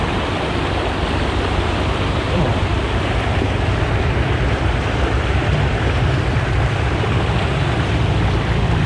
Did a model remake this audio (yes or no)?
yes